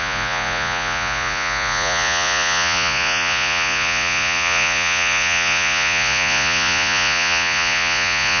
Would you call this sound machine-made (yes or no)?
yes